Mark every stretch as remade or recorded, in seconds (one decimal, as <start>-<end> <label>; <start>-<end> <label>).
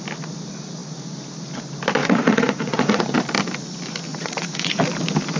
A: 0.0-2.0 recorded; 2.0-3.0 remade; 3.0-4.1 recorded; 4.1-4.8 remade; 4.8-5.4 recorded